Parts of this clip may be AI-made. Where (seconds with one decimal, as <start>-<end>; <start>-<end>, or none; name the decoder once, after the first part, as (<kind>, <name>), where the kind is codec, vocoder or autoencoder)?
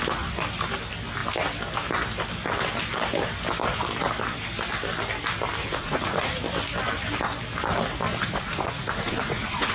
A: 5.6-6.4 (vocoder, Vocos); 8.1-9.7